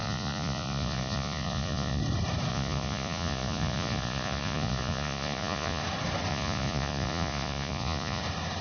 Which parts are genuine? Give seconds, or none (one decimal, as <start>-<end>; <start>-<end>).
2.0-2.5; 5.8-6.3; 8.2-8.6

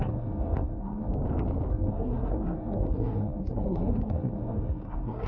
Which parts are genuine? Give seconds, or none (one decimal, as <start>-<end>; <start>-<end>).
1.1-1.7

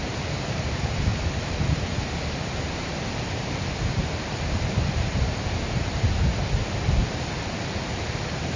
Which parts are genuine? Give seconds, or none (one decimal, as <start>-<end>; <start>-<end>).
0.0-8.6

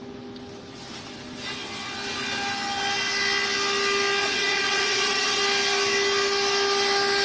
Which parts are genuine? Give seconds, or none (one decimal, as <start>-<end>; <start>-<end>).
0.0-4.2; 5.4-7.2

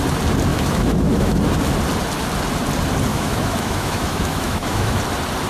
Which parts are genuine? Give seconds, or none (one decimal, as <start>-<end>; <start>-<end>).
0.0-0.5; 1.4-3.1; 5.0-5.5